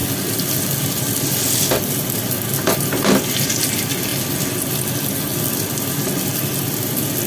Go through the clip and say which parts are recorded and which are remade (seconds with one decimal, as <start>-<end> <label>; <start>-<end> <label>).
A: 0.0-7.3 recorded